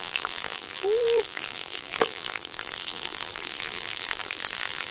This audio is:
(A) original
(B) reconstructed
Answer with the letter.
B